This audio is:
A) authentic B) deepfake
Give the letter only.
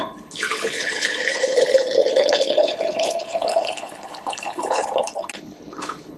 B